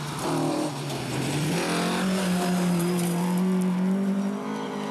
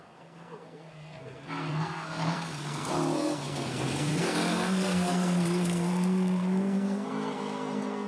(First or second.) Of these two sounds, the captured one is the first